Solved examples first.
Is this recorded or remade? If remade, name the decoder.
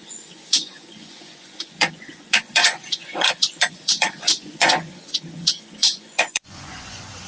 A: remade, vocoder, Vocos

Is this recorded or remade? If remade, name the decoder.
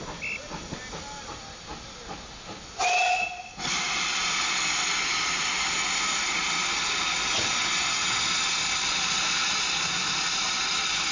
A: recorded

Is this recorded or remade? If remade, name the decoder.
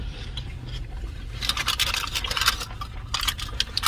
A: remade, vocoder, BigVGAN v2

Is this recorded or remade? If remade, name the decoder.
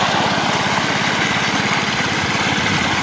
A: recorded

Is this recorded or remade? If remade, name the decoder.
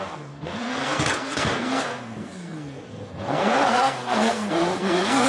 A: remade, codec, SNAC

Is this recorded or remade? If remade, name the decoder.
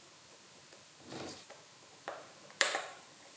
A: remade, vocoder, BigVGAN v2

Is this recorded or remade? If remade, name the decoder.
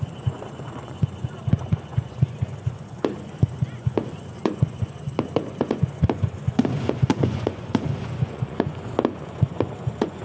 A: remade, vocoder, Vocos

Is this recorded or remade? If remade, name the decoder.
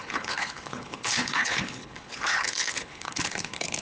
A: remade, codec, HILCodec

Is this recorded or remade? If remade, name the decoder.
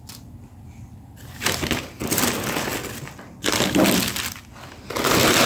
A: recorded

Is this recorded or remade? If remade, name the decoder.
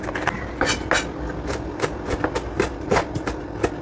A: recorded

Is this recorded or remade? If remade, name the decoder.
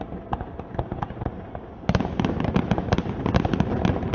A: recorded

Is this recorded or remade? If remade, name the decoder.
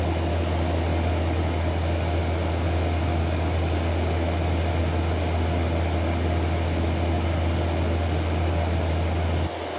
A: recorded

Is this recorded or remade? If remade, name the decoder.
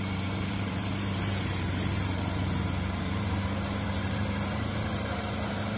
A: remade, vocoder, BigVGAN v2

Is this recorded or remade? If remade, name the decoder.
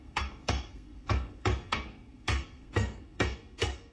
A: remade, codec, SNAC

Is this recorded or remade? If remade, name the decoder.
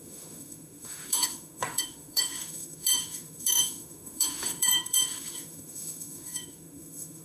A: remade, autoencoder, DAC-VAE